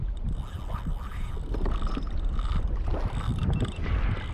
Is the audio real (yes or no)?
yes